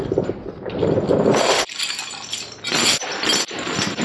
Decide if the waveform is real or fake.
real